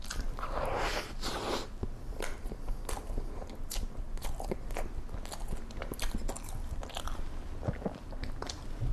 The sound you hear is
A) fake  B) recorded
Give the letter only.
B